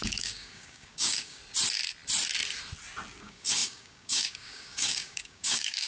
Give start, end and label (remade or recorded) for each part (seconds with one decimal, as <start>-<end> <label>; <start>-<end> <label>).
0.0-1.4 remade; 1.4-3.2 recorded; 3.2-5.9 remade